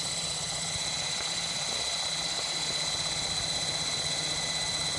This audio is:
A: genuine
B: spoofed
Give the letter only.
A